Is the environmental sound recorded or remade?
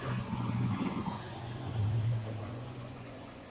remade